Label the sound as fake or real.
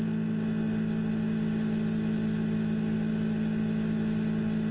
real